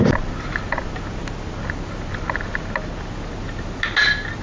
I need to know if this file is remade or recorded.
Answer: recorded